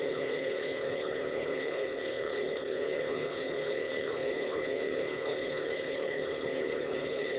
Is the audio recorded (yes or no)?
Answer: no